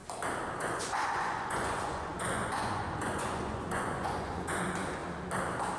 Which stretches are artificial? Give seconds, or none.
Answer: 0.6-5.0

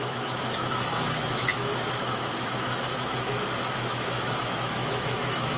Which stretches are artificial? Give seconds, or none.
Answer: 0.0-5.6

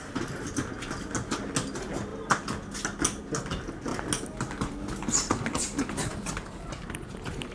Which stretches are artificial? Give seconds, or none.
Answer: none

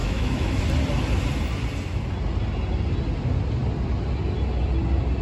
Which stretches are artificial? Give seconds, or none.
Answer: 0.0-0.6

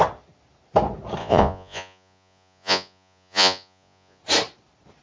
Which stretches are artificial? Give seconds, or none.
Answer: 1.2-4.2

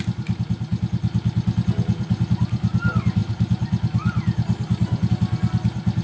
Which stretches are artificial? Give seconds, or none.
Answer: none